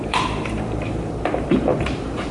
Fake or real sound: fake